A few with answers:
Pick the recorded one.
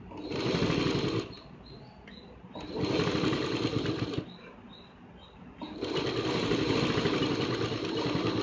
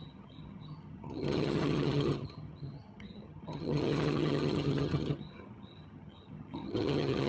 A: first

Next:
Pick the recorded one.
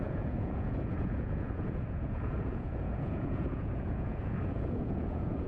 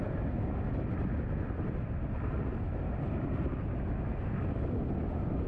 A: second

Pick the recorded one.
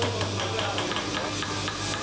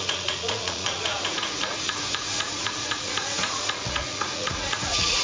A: first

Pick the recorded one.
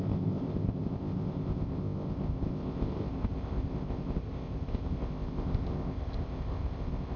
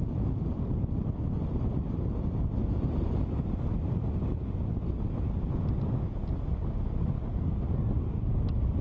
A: second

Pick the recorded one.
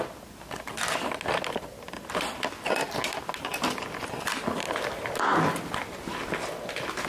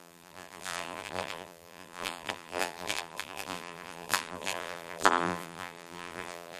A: first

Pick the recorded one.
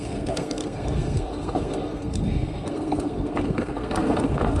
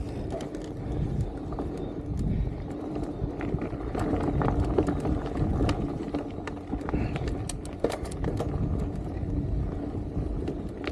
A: second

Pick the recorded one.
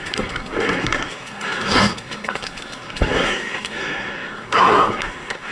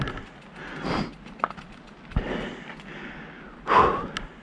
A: second